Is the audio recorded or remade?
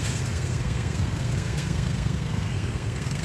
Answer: remade